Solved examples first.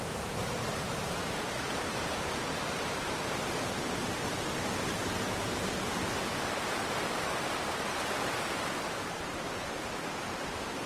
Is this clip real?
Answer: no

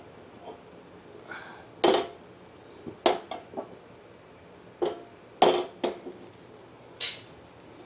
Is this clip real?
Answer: yes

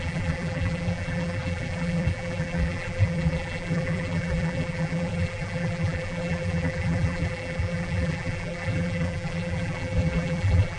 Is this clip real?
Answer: no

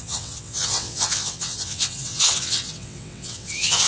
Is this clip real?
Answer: no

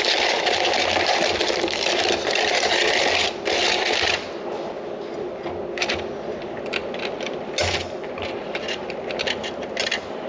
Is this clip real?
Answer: yes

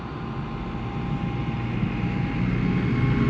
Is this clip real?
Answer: yes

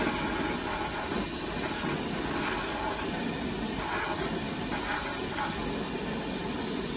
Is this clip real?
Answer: yes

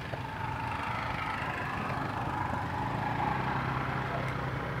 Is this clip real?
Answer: yes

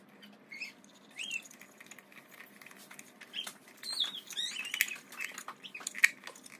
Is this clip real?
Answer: yes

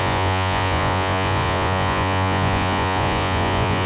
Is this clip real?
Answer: no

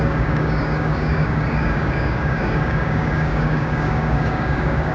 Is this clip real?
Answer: no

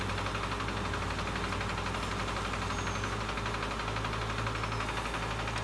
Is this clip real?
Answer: yes